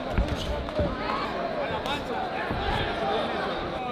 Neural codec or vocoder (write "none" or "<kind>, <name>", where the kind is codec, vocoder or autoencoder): none